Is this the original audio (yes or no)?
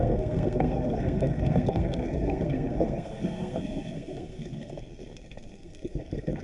no